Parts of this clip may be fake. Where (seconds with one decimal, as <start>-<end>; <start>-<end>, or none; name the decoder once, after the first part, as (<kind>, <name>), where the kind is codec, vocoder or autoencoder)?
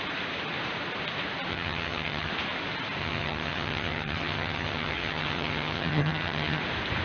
1.5-2.3 (vocoder, HiFi-GAN); 3.0-6.6